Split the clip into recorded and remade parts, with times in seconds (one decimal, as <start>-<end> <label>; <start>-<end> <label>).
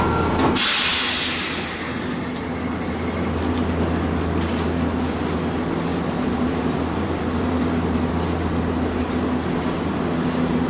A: 0.0-5.9 recorded; 5.9-8.1 remade; 8.1-10.7 recorded